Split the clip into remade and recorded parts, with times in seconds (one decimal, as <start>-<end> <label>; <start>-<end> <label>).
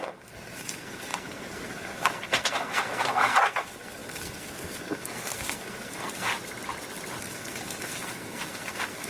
0.0-6.3 remade; 6.3-7.2 recorded; 7.2-9.1 remade